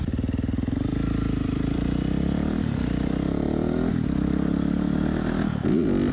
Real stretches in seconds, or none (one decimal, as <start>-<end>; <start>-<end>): 0.0-0.9; 3.9-6.1